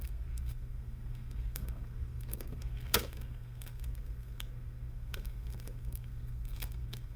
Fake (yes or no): yes